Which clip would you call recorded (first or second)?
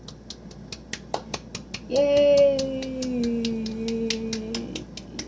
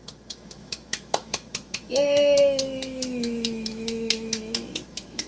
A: first